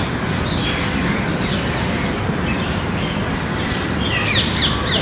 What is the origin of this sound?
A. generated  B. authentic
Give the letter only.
B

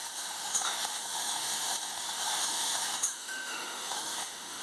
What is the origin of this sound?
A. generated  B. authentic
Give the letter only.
A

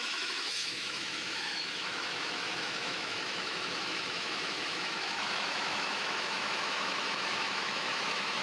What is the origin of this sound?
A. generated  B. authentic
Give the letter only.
A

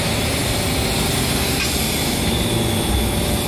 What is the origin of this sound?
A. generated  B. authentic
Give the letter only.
B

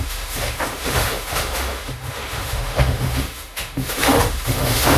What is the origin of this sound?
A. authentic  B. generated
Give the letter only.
B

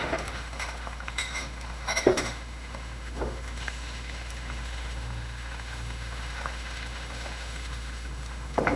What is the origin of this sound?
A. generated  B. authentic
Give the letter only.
A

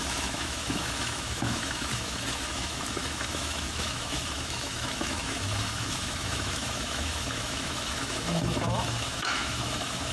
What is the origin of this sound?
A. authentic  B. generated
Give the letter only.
B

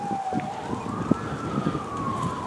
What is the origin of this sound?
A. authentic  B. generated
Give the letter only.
A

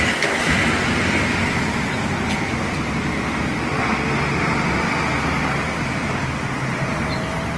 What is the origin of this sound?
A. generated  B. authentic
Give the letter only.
B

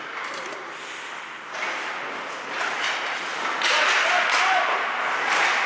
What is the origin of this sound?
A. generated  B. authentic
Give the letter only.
B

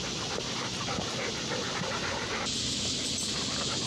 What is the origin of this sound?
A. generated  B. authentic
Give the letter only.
B